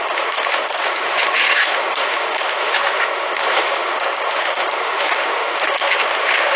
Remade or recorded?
remade